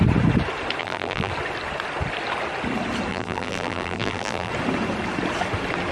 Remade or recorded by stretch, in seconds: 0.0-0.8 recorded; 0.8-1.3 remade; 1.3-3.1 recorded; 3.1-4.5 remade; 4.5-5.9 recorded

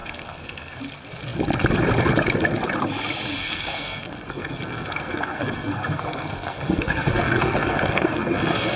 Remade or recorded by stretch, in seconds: 0.0-0.8 remade; 0.8-3.4 recorded; 3.4-8.8 remade

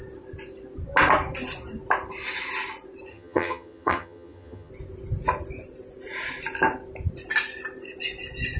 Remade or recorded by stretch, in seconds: 0.0-3.1 recorded; 3.1-4.7 remade; 4.7-8.6 recorded

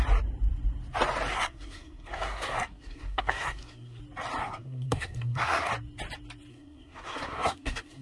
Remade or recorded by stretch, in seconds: 0.0-1.3 recorded; 1.3-4.0 remade; 4.0-4.4 recorded; 4.4-5.7 remade; 5.7-6.5 recorded; 6.5-8.0 remade

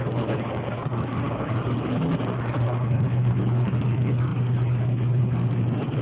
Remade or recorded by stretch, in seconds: 0.0-6.0 remade

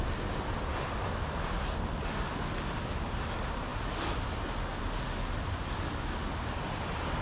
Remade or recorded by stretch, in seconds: 0.0-7.2 recorded

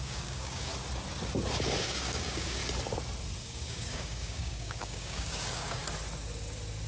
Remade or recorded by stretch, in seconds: 0.0-0.7 remade; 0.7-1.8 recorded; 1.8-2.6 remade; 2.6-3.4 recorded; 3.4-5.8 remade; 5.8-6.9 recorded

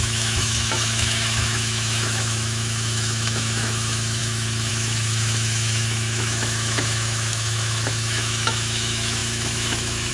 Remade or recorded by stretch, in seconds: 0.0-10.1 remade